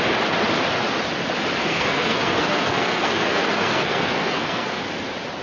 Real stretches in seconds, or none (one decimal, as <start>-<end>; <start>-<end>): 0.0-1.6; 4.8-5.4